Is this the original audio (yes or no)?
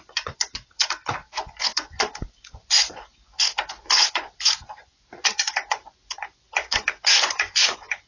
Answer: no